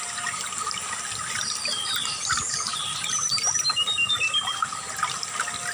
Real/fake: real